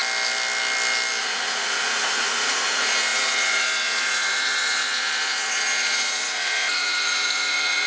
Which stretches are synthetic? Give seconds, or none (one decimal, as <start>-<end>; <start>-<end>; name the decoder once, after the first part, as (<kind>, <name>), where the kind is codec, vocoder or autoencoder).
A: 1.2-7.9 (vocoder, Vocos)